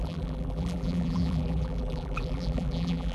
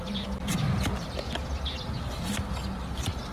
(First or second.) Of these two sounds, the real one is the second